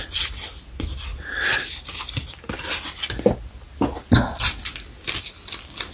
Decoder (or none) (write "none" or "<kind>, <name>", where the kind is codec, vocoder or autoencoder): none